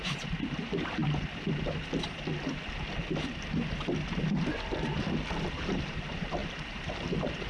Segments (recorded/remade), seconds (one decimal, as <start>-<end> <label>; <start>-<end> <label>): 0.0-1.0 remade; 1.0-5.5 recorded; 5.5-7.5 remade